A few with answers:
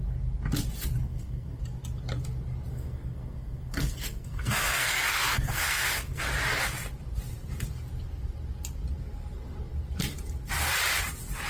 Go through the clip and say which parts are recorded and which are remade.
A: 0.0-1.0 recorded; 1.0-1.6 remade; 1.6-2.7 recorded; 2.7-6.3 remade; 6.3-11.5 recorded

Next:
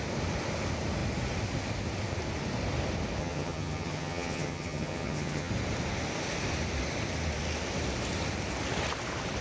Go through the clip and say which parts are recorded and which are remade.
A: 0.0-3.2 recorded; 3.2-5.5 remade; 5.5-9.4 recorded

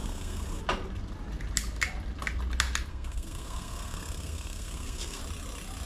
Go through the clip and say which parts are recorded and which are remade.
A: 0.0-0.6 remade; 0.6-2.9 recorded; 2.9-5.2 remade; 5.2-5.9 recorded

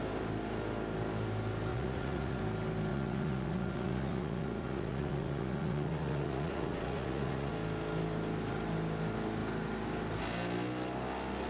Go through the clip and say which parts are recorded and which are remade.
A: 0.0-1.7 recorded; 1.7-2.4 remade; 2.4-2.9 recorded; 2.9-7.5 remade; 7.5-11.5 recorded

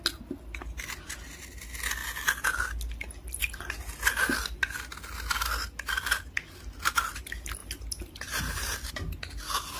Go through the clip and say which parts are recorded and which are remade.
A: 0.0-9.8 recorded

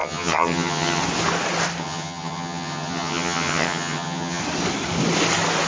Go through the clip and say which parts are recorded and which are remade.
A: 0.0-1.0 remade; 1.0-1.8 recorded; 1.8-4.4 remade; 4.4-5.7 recorded

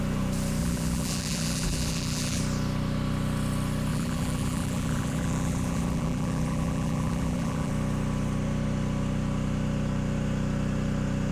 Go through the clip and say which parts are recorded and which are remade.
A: 0.0-0.6 recorded; 0.6-2.4 remade; 2.4-3.9 recorded; 3.9-7.7 remade; 7.7-11.3 recorded

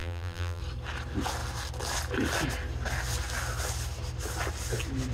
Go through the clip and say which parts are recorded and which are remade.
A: 0.0-0.6 remade; 0.6-5.1 recorded